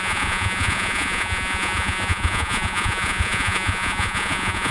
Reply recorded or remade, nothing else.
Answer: remade